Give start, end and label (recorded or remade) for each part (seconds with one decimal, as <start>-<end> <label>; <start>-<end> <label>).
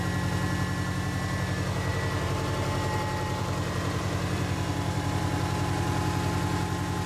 0.0-1.9 recorded; 1.9-5.1 remade; 5.1-7.1 recorded